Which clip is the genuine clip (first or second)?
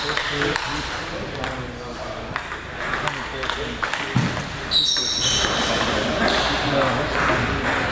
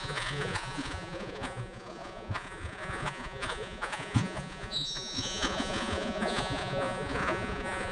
first